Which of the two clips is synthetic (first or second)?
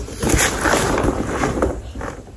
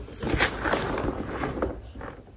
first